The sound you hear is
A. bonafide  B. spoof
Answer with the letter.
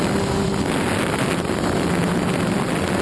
A